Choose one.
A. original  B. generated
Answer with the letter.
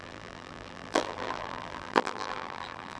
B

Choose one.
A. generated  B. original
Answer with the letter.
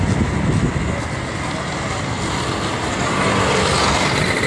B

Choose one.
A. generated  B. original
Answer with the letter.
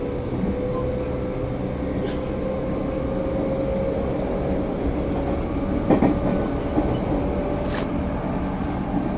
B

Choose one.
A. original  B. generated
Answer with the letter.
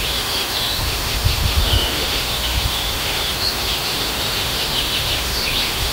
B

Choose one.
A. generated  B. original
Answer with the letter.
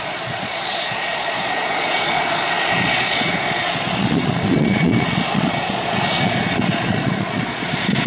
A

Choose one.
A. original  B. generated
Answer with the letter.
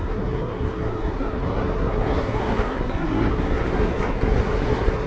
B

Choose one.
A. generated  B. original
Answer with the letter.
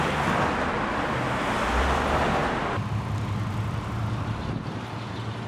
B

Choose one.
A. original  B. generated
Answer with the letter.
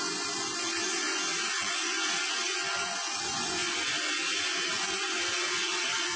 B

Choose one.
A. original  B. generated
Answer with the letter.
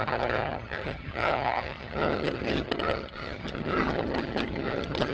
B